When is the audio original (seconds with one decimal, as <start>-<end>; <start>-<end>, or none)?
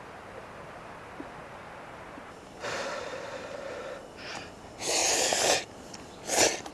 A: 0.0-2.6; 4.0-5.0